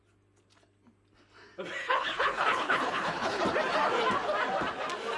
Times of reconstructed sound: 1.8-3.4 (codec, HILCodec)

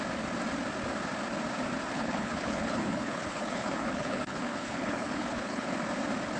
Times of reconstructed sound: 1.9-5.7 (codec, HILCodec)

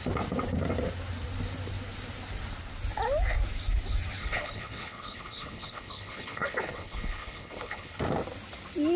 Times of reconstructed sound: 4.2-8.0 (codec, HILCodec)

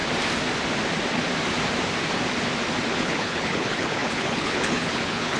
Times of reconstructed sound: 2.9-5.4 (codec, HILCodec)

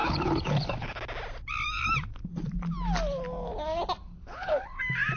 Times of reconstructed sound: 0.0-1.0 (codec, HILCodec); 4.0-4.8

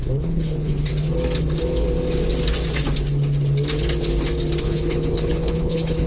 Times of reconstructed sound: 0.0-0.9 (codec, HILCodec); 4.6-6.1

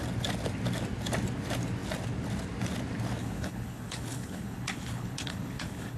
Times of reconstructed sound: 3.2-6.0 (codec, HILCodec)

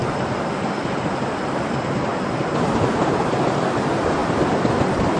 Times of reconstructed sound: none